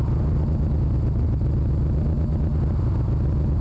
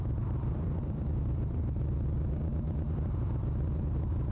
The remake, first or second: second